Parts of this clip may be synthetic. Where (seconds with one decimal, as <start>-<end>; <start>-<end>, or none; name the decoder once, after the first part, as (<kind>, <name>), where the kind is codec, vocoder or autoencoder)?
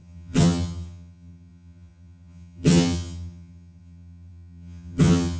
0.0-5.4 (vocoder, HiFi-GAN)